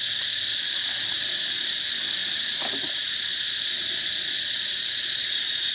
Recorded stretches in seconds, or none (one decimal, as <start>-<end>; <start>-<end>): 0.0-2.2; 3.4-5.7